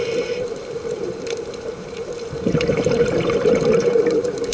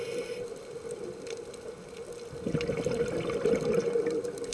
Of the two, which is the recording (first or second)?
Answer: second